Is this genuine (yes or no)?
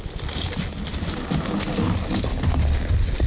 yes